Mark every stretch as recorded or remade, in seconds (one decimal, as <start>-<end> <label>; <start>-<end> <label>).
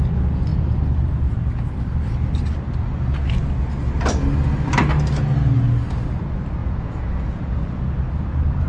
0.0-6.6 recorded; 6.6-7.8 remade; 7.8-8.7 recorded